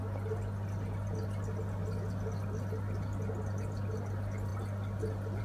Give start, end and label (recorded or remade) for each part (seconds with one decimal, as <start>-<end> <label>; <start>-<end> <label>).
0.0-5.4 recorded